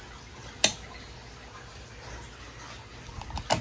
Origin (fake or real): real